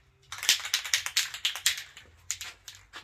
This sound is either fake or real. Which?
real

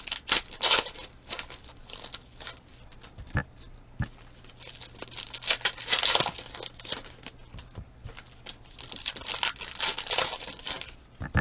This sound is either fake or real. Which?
real